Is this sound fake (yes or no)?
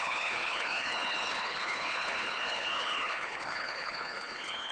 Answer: yes